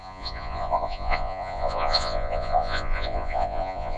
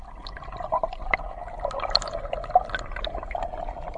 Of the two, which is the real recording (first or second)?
second